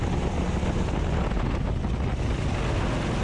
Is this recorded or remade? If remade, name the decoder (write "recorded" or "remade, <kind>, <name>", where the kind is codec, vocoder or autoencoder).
recorded